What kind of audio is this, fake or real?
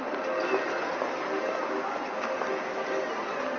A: real